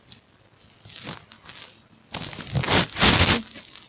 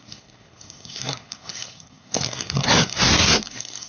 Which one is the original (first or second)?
first